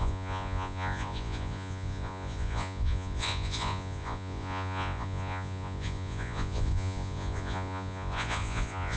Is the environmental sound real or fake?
fake